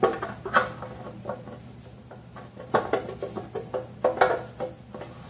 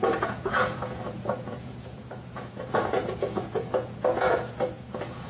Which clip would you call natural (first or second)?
first